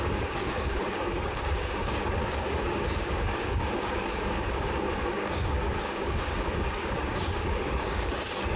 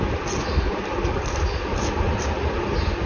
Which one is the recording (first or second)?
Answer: second